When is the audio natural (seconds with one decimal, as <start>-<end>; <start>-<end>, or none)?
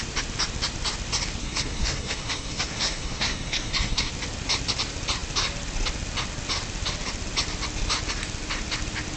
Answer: 0.0-1.4; 4.1-9.2